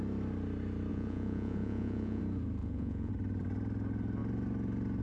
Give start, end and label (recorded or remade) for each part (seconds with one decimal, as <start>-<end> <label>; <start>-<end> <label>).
0.0-0.9 recorded; 0.9-2.2 remade; 2.2-2.6 recorded; 2.6-3.1 remade; 3.1-5.0 recorded